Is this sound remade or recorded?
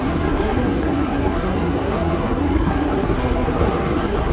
remade